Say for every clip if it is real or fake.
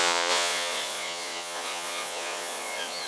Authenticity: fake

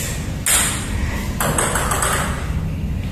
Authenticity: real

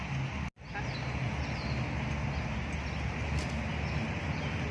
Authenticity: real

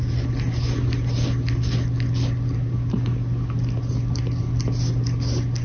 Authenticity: real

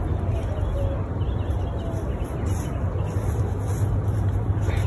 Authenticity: real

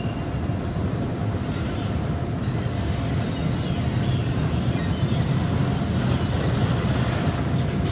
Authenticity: real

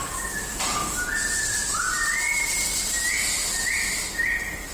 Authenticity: fake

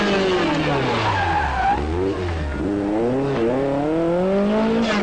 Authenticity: real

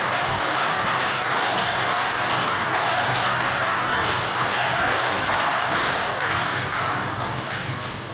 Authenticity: fake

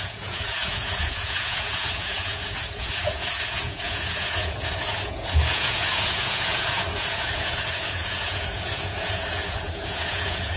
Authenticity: fake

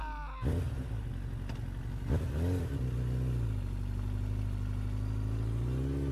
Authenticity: real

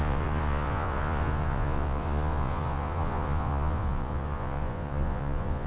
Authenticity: fake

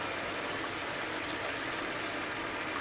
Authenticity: real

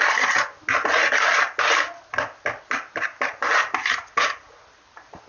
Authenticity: real